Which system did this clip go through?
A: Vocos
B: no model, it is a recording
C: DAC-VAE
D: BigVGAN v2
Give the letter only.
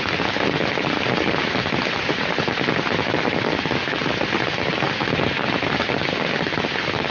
B